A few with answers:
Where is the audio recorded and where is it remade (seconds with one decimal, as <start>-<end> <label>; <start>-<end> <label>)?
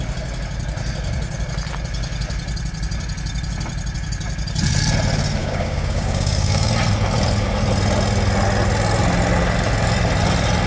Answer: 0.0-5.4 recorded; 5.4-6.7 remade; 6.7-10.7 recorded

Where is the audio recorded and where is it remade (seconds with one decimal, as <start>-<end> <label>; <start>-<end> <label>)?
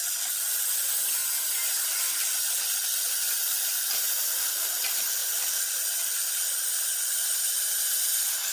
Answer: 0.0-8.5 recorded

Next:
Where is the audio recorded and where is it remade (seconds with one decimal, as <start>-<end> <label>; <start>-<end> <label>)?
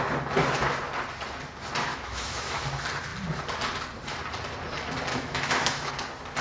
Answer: 0.0-1.9 recorded; 1.9-2.6 remade; 2.6-5.1 recorded; 5.1-5.9 remade; 5.9-6.4 recorded